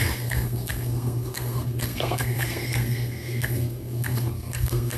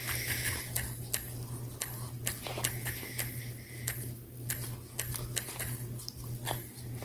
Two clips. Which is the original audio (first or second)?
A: second